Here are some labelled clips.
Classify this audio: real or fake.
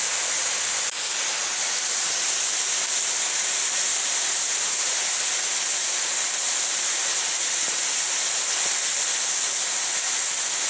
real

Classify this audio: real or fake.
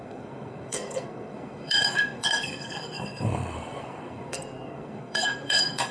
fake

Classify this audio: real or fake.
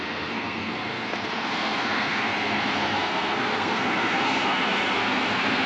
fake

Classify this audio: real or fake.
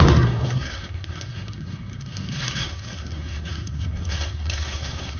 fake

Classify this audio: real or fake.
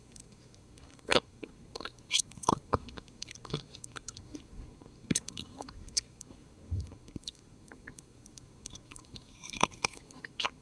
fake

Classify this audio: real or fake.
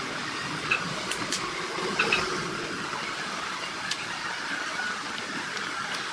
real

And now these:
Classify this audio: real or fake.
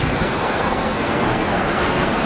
fake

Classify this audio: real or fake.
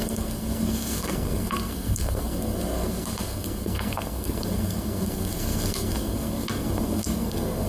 fake